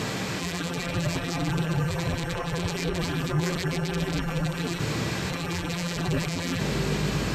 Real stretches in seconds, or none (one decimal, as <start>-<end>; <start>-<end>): 0.0-0.4; 4.8-5.3; 6.6-7.3